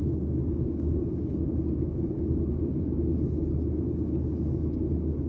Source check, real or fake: fake